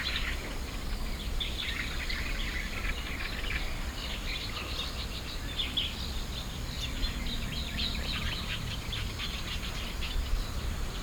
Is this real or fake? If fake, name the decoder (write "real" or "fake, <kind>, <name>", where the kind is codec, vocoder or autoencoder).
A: fake, vocoder, BigVGAN v2